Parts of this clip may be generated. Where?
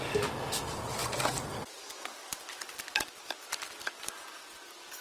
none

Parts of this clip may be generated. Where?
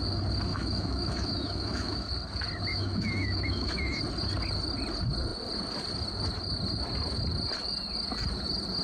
0.5-2.1 (autoencoder, DAC-VAE); 2.7-4.0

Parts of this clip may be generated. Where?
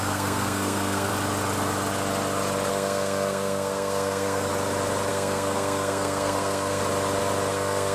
0.0-1.1 (codec, SNAC); 2.7-4.5; 5.1-6.8; 7.5-7.9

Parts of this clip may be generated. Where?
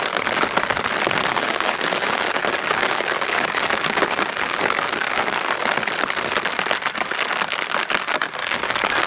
1.3-5.4 (codec, DAC); 8.4-9.1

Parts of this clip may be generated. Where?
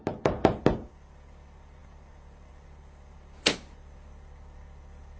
none